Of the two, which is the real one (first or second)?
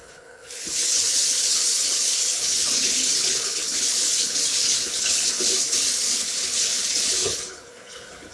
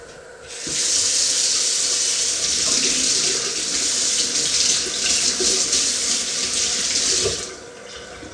second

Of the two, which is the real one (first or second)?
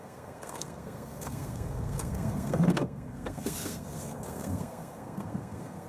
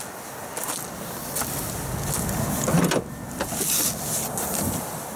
second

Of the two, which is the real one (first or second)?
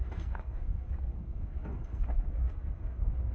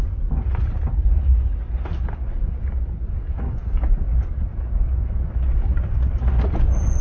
second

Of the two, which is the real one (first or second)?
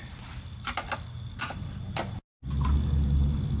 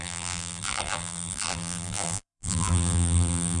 first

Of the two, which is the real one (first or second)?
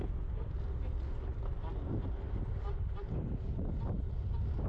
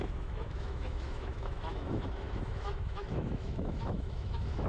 first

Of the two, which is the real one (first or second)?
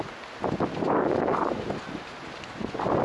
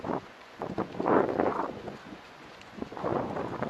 first